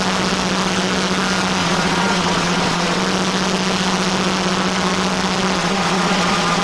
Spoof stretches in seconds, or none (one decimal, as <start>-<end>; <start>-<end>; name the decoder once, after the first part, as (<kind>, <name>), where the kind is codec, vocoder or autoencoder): 1.6-3.0 (vocoder, Vocos); 5.6-6.6